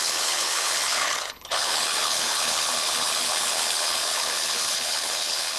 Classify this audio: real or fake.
fake